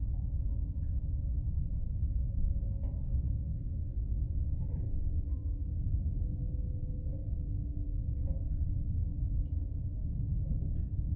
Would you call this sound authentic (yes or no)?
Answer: yes